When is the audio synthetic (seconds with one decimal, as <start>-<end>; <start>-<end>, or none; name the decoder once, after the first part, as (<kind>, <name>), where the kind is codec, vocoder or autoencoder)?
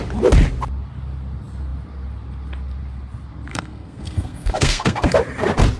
3.5-5.1 (codec, SNAC)